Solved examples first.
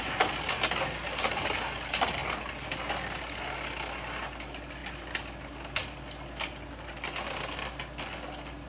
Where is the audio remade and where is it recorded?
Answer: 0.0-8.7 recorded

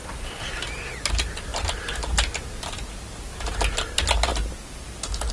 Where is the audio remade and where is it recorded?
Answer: 0.0-5.3 recorded

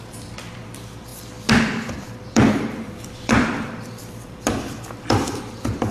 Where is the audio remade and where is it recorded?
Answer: 0.0-1.1 remade; 1.1-1.9 recorded; 1.9-5.9 remade

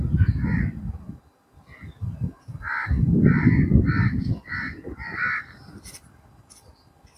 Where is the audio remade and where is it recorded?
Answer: 0.0-3.9 recorded; 3.9-4.5 remade; 4.5-7.2 recorded

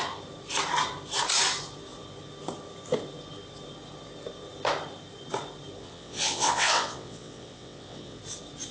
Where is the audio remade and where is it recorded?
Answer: 0.0-5.8 recorded; 5.8-8.2 remade; 8.2-8.7 recorded

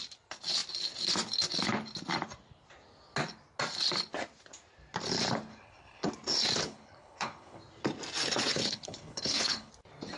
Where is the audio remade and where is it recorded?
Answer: 0.0-5.5 recorded; 5.5-6.1 remade; 6.1-6.6 recorded; 6.6-7.6 remade; 7.6-8.5 recorded; 8.5-9.7 remade; 9.7-10.2 recorded

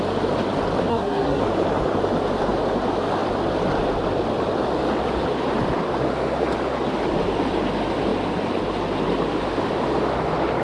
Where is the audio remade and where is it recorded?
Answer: 0.0-0.9 recorded; 0.9-1.4 remade; 1.4-10.6 recorded

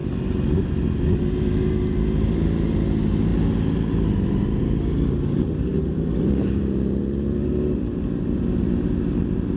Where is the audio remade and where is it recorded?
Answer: 0.0-9.6 recorded